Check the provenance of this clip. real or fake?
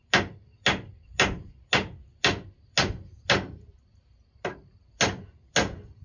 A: real